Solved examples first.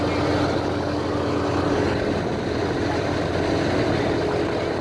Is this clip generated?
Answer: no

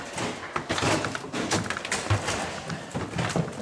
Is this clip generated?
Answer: no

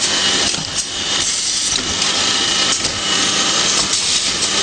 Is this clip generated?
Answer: yes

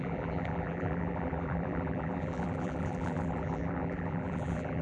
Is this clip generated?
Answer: yes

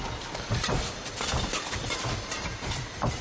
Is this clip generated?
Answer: no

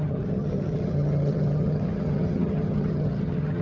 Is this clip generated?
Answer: yes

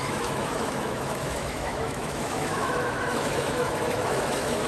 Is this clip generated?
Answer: yes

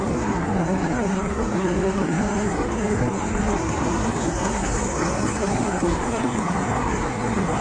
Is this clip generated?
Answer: yes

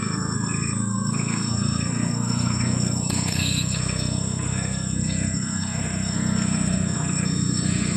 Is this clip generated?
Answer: yes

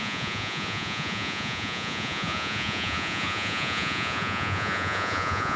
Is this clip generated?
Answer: yes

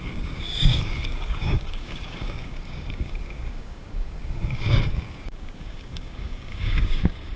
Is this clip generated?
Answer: yes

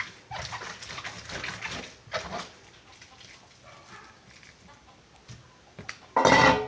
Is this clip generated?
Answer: no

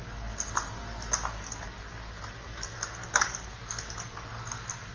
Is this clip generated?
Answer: no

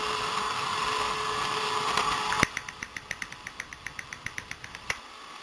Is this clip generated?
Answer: yes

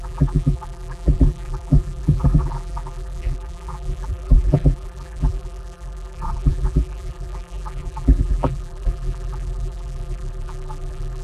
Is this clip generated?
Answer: yes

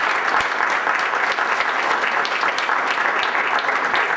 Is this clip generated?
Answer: no